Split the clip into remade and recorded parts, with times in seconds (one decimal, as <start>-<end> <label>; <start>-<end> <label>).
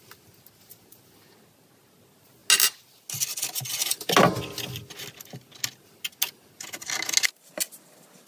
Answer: 0.0-8.3 recorded